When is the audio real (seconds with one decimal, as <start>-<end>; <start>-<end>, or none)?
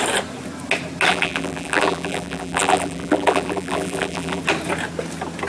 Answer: 0.0-1.1; 4.4-5.5